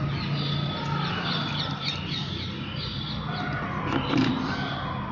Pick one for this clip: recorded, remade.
recorded